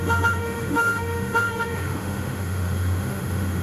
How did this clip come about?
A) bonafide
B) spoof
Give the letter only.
B